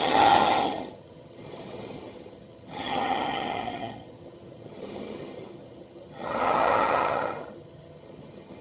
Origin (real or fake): fake